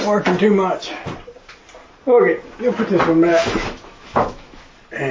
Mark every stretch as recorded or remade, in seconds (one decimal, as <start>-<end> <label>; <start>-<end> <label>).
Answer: 0.0-3.3 recorded; 3.3-4.6 remade; 4.6-5.1 recorded